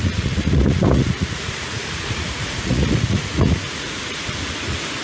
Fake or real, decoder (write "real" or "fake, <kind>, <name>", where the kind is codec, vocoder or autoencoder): fake, vocoder, Vocos